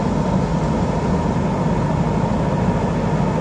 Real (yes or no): yes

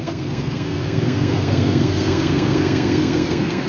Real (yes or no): no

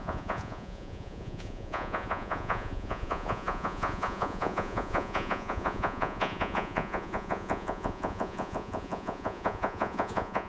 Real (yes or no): no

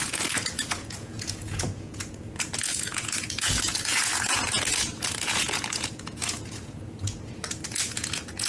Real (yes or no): no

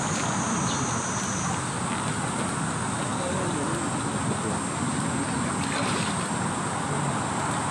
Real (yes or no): yes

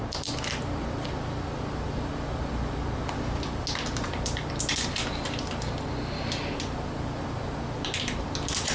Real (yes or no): yes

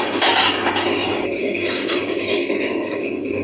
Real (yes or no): no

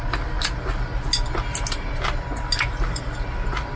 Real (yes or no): yes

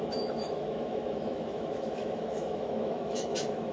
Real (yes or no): no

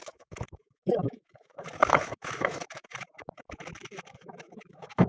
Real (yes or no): no